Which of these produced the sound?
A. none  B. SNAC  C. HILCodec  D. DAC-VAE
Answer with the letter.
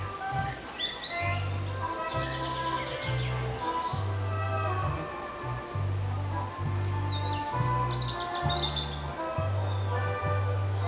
A